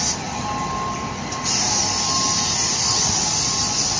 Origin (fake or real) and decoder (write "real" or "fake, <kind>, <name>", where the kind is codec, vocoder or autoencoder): real